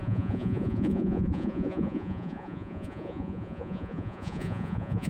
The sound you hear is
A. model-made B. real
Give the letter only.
A